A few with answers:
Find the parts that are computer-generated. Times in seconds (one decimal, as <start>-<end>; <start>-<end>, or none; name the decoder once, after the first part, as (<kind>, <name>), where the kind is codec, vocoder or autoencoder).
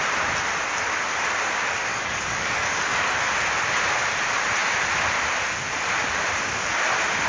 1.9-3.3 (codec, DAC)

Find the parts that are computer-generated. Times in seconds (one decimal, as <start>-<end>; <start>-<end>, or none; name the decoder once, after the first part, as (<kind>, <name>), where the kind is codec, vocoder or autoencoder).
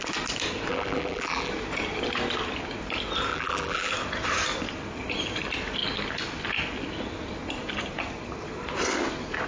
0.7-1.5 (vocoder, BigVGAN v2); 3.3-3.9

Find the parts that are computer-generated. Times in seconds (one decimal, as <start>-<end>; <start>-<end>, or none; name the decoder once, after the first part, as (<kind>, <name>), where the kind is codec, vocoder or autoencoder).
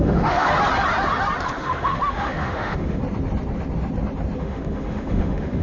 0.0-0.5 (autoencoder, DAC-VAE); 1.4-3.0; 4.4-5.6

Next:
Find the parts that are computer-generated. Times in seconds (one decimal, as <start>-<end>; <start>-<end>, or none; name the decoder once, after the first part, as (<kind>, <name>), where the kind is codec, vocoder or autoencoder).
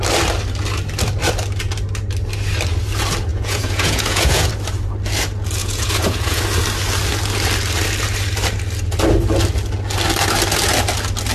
3.3-4.5 (vocoder, Vocos); 5.6-6.4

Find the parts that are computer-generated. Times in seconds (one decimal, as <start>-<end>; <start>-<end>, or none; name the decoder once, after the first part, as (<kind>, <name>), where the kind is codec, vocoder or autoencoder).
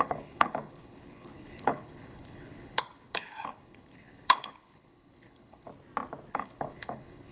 0.0-5.7 (codec, HILCodec); 6.3-7.3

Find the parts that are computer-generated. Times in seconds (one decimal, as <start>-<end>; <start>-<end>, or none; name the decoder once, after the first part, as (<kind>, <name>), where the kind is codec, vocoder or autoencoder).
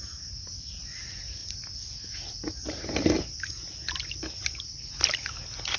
none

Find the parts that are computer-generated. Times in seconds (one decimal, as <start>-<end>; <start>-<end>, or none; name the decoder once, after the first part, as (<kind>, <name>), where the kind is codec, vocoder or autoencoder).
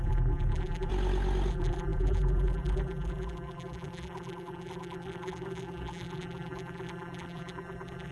0.0-0.9 (vocoder, BigVGAN v2); 1.5-8.1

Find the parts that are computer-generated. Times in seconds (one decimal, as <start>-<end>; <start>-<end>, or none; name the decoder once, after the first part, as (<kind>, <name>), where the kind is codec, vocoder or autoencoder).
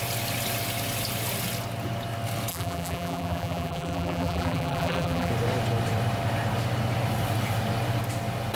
2.5-5.3 (vocoder, BigVGAN v2)